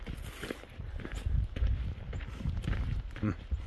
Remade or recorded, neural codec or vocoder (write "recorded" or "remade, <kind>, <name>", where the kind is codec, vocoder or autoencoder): recorded